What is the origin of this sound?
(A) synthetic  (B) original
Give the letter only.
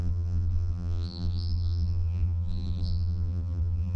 A